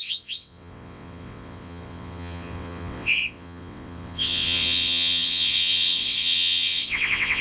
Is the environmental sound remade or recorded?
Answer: remade